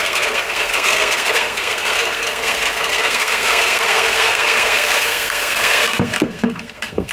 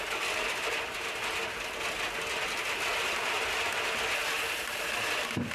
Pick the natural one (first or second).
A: second